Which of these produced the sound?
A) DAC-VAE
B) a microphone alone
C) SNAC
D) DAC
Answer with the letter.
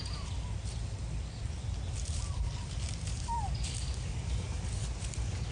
B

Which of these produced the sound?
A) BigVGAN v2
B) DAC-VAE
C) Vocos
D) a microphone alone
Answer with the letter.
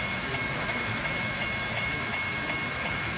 B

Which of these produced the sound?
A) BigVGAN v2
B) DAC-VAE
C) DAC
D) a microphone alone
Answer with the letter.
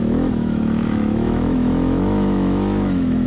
B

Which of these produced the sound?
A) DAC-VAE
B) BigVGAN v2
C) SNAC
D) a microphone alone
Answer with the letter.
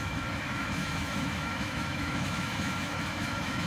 A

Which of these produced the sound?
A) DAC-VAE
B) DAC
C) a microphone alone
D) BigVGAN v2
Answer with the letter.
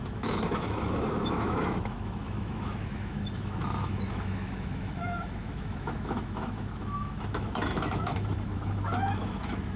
A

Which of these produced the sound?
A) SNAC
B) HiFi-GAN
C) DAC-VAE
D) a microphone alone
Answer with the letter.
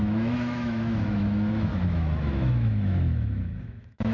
C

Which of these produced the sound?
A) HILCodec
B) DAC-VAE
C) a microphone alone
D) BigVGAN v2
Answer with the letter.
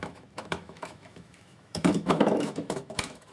B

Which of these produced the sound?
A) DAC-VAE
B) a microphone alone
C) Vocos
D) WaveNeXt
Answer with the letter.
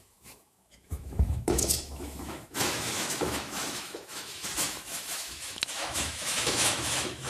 A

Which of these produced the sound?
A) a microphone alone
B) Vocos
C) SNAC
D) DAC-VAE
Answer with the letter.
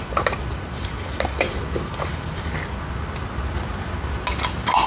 A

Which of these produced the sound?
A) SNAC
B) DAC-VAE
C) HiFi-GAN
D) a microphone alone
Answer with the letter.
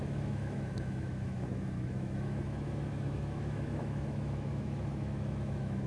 B